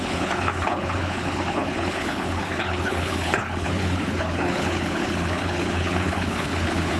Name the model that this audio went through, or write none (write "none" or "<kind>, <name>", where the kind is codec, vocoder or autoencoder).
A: codec, HILCodec